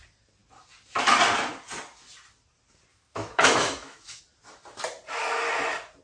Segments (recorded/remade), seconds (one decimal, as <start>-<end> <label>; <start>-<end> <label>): 0.0-2.9 recorded; 2.9-4.2 remade; 4.2-6.0 recorded